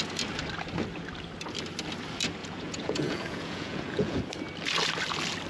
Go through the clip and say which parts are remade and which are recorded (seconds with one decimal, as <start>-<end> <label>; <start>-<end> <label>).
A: 0.0-2.4 recorded; 2.4-4.2 remade; 4.2-5.5 recorded